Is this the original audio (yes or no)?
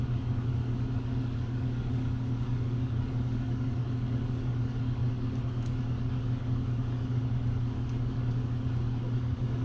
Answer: no